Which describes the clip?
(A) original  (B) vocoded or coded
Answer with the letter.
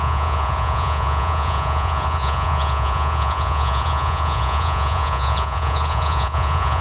B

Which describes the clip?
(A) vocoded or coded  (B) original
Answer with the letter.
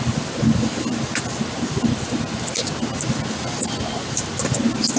B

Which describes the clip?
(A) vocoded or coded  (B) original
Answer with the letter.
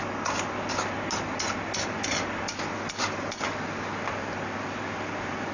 B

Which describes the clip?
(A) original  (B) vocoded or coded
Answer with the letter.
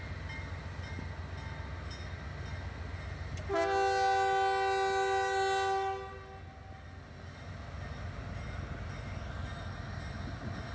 A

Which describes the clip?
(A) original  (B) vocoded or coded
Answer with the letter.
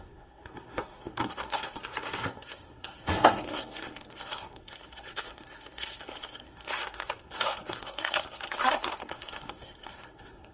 B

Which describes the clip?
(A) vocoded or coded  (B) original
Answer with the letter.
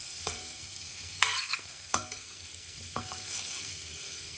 A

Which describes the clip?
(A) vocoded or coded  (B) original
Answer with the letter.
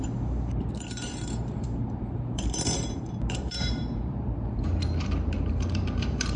A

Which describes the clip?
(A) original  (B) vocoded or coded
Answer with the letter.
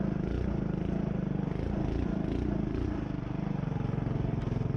A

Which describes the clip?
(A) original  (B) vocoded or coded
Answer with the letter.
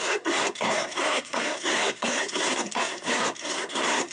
B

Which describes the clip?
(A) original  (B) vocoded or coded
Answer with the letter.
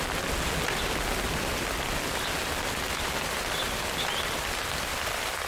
A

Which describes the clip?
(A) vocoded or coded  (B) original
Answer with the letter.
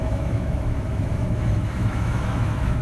A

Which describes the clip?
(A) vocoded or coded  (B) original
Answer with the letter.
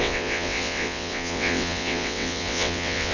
A